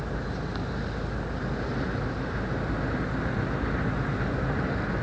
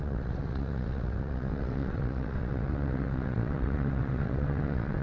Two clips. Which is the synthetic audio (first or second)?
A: second